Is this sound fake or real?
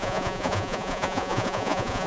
fake